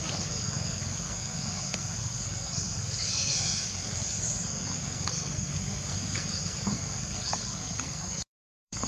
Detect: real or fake fake